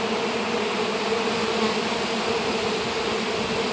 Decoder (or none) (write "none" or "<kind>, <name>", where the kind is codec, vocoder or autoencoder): none